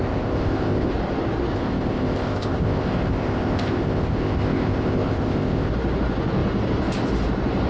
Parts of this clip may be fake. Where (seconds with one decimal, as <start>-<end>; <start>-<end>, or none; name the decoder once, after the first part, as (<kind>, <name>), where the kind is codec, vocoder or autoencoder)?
0.0-0.9 (codec, ZipCodec); 1.5-5.7